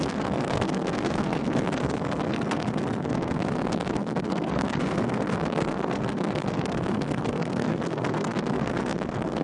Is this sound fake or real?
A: fake